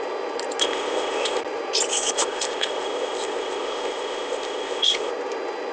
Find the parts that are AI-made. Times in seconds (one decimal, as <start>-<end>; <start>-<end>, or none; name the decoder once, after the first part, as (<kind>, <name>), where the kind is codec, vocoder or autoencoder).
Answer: 0.6-1.4 (codec, ZipCodec); 1.9-5.1